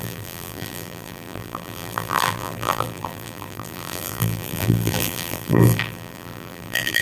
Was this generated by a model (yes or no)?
yes